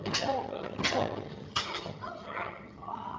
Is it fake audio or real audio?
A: fake